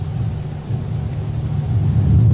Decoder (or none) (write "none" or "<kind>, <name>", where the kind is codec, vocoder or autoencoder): none